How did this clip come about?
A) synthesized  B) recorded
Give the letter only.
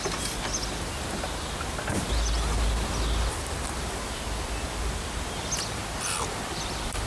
B